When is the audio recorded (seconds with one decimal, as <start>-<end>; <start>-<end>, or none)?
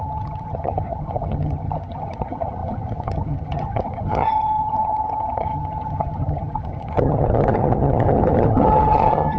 none